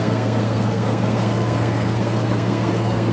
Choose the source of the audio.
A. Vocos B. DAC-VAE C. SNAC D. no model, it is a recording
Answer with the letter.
C